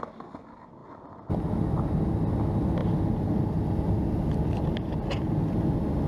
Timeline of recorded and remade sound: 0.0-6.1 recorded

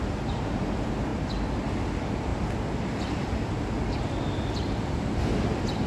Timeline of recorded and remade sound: 0.0-5.9 recorded

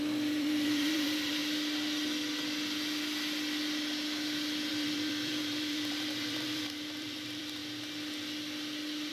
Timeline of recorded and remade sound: 0.0-1.4 remade; 1.4-4.7 recorded; 4.7-7.6 remade; 7.6-9.1 recorded

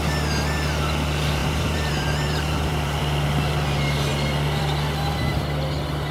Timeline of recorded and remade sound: 0.0-1.4 recorded; 1.4-3.0 remade; 3.0-6.1 recorded

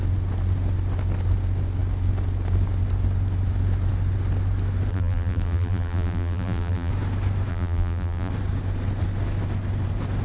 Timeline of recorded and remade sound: 0.0-4.9 recorded; 4.9-6.9 remade; 6.9-7.5 recorded; 7.5-8.3 remade; 8.3-10.2 recorded

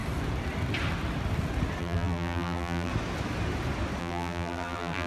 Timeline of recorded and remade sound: 0.0-1.8 recorded; 1.8-2.9 remade; 2.9-4.0 recorded; 4.0-5.1 remade